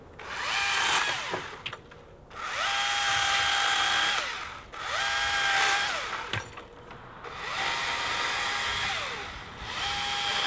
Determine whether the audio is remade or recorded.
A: recorded